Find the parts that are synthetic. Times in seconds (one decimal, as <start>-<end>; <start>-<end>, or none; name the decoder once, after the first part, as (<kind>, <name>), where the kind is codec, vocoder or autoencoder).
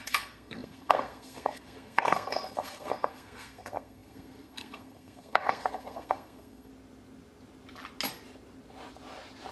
0.0-6.7 (codec, SNAC)